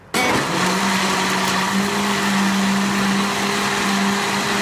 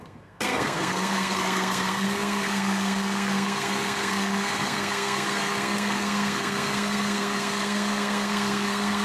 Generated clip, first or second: second